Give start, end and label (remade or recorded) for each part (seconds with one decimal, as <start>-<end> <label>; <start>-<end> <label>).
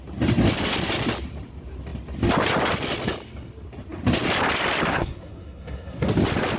0.0-4.9 recorded; 4.9-6.1 remade; 6.1-6.6 recorded